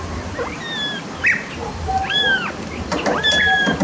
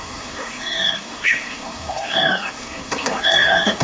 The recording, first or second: first